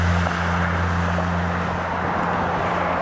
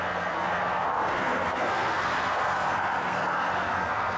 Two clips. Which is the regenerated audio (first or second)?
second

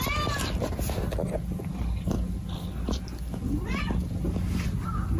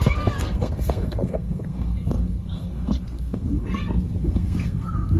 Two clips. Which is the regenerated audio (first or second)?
second